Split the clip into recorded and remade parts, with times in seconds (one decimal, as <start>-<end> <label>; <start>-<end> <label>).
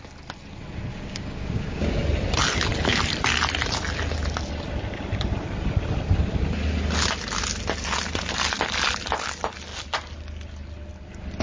0.0-0.9 recorded; 0.9-2.0 remade; 2.0-11.4 recorded